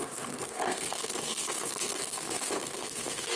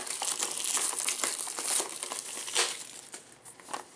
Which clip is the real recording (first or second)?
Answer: second